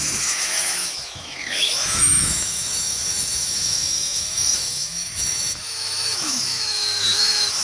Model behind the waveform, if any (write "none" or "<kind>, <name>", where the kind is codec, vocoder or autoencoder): autoencoder, DAC-VAE